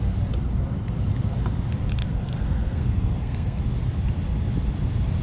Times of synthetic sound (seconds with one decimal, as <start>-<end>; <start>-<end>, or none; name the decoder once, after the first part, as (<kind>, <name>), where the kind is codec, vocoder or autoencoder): 2.0-3.6 (codec, SNAC)